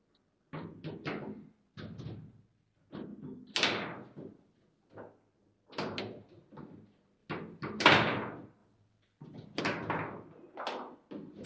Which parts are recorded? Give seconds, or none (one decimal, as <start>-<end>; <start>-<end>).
0.0-11.5